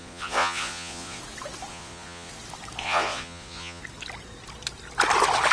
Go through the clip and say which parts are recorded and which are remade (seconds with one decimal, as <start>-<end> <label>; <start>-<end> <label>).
0.0-1.2 remade; 1.2-1.7 recorded; 1.7-2.3 remade; 2.3-2.8 recorded; 2.8-3.8 remade; 3.8-5.5 recorded